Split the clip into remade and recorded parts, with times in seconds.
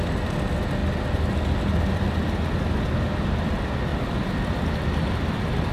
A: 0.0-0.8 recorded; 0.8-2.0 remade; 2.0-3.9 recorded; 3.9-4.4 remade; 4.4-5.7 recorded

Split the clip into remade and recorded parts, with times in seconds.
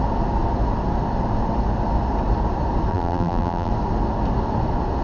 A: 0.0-2.9 recorded; 2.9-3.7 remade; 3.7-5.0 recorded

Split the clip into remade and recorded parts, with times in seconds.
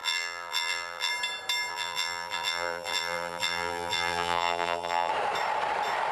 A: 0.0-1.1 remade; 1.1-1.7 recorded; 1.7-5.1 remade; 5.1-6.1 recorded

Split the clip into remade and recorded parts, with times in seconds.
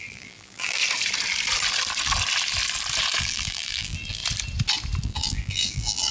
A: 0.0-0.8 remade; 0.8-3.2 recorded; 3.2-4.2 remade; 4.2-5.0 recorded; 5.0-6.1 remade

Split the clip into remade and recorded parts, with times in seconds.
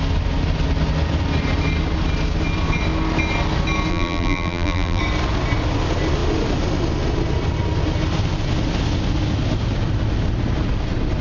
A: 0.0-3.9 recorded; 3.9-5.0 remade; 5.0-11.2 recorded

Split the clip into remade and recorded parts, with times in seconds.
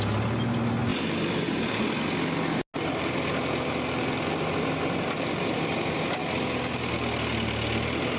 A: 0.0-8.2 recorded